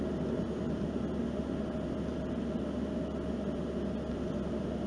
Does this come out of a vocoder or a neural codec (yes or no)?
no